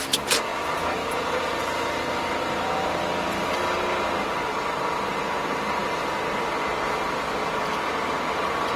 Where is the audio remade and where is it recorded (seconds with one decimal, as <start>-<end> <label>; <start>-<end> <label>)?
0.0-8.8 recorded